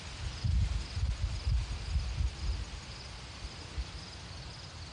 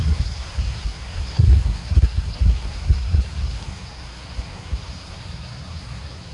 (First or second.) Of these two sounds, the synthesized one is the second